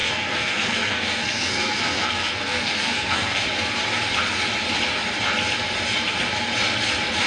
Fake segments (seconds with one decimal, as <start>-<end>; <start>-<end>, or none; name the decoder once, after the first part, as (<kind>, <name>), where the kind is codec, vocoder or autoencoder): 0.0-3.4 (codec, SNAC)